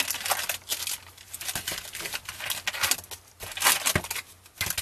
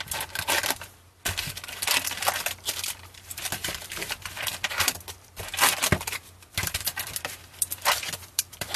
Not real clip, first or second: second